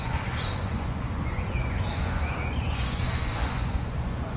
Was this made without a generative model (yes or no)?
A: no